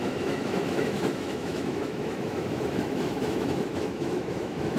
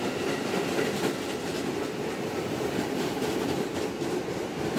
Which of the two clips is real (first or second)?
second